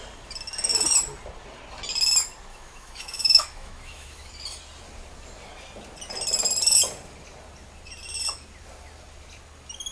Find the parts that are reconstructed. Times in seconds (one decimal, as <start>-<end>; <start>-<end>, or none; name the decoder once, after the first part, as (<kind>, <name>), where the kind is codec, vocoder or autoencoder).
2.5-4.3 (autoencoder, DAC-VAE)